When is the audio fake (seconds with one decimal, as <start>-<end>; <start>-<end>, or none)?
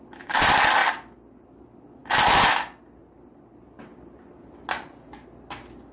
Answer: none